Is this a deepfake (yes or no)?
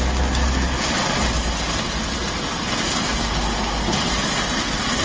no